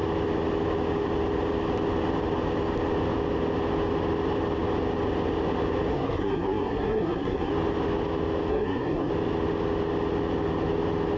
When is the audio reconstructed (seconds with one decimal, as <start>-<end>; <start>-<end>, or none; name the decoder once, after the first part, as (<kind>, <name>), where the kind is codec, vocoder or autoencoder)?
5.9-7.5 (codec, SNAC); 8.5-9.1